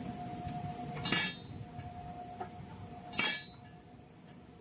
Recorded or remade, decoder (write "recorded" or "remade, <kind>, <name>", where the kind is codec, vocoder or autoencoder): recorded